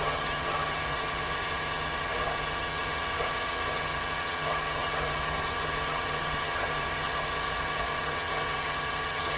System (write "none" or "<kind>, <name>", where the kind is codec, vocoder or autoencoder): vocoder, HiFi-GAN